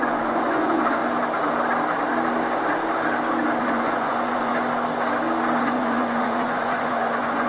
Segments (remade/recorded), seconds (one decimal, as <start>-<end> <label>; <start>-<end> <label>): 0.0-1.0 remade; 1.0-3.6 recorded; 3.6-4.5 remade; 4.5-5.6 recorded; 5.6-7.5 remade